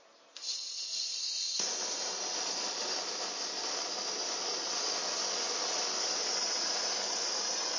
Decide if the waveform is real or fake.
real